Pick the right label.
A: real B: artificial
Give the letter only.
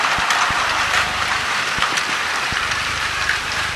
B